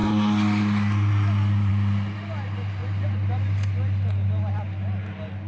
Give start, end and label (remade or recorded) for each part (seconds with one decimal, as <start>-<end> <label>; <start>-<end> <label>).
0.0-5.5 recorded